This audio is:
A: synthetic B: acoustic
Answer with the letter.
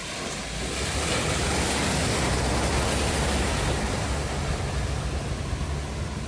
B